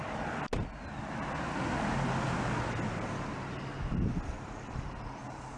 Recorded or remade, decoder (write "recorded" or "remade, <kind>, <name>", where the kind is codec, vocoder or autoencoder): recorded